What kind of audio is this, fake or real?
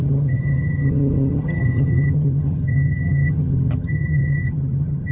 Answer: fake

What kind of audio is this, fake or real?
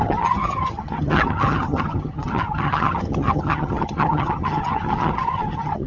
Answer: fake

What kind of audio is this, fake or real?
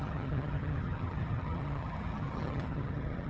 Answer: fake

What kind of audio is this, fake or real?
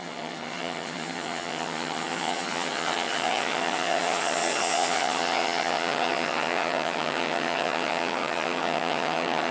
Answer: fake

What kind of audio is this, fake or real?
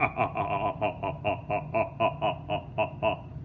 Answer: real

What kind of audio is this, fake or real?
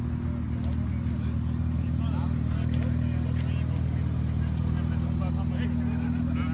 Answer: real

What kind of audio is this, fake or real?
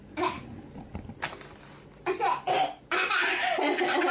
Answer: real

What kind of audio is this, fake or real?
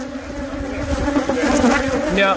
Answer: real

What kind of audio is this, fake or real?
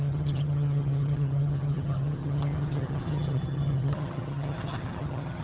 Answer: fake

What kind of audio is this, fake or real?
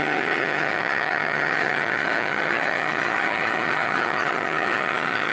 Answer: fake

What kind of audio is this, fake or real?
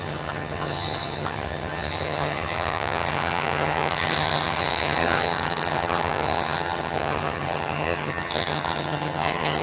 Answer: fake